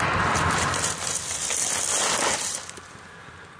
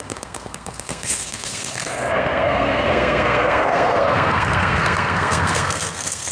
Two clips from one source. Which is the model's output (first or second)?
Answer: second